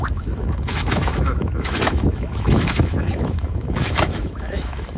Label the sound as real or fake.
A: fake